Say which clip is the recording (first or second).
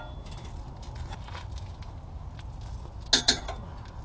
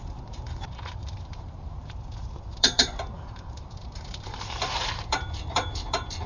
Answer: first